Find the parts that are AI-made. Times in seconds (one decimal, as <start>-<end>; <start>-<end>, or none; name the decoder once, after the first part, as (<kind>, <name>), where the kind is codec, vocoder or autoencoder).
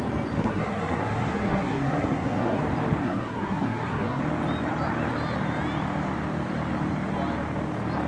0.4-2.6 (codec, SNAC); 3.0-4.2